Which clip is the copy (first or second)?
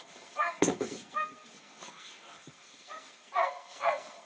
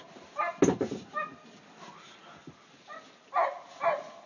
first